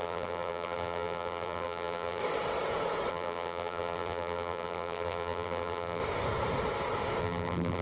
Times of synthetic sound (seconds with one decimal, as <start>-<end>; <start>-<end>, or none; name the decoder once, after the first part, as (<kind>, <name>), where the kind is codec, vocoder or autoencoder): 0.0-2.2 (vocoder, BigVGAN v2); 3.1-6.0; 7.2-7.8